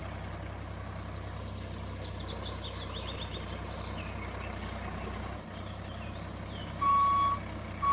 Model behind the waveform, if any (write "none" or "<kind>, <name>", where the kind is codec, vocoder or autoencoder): none